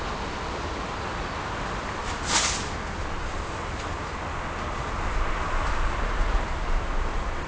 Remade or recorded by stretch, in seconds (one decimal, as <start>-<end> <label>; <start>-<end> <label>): 0.0-7.5 recorded